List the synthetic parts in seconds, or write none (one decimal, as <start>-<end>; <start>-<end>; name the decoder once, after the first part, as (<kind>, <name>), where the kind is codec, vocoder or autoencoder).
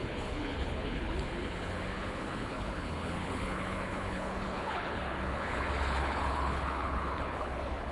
0.0-7.9 (codec, HILCodec)